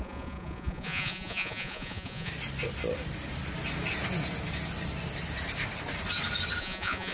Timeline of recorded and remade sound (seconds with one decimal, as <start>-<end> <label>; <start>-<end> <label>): 0.0-2.3 remade; 2.3-6.6 recorded; 6.6-7.1 remade